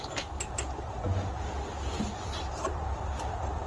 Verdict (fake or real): real